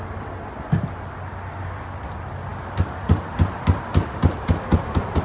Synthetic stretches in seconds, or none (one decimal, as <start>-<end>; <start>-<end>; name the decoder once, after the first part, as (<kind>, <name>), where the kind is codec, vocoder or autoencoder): none